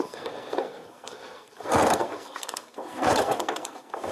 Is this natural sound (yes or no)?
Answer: no